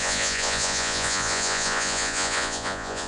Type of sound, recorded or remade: remade